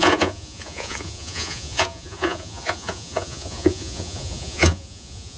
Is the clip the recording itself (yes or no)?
no